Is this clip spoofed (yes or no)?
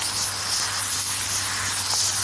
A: no